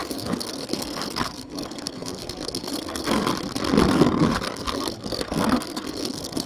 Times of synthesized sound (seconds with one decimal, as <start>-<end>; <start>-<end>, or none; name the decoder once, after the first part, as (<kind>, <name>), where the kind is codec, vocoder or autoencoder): 0.0-3.3 (codec, SNAC); 3.9-6.5